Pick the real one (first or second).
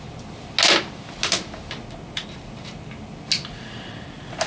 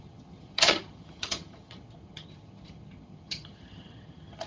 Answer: first